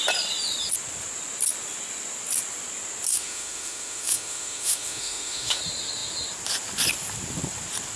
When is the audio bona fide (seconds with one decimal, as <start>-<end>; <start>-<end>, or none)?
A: 0.0-3.1; 5.6-8.0